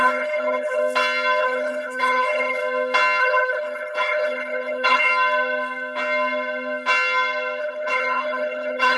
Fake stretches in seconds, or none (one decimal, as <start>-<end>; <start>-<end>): 0.0-0.8; 1.4-2.6; 3.2-5.1; 7.6-9.0